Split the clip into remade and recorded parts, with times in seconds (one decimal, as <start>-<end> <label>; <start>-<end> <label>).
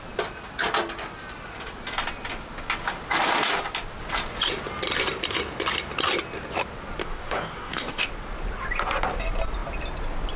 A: 0.0-7.0 recorded; 7.0-8.1 remade; 8.1-10.4 recorded